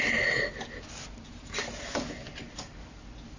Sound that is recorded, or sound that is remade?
recorded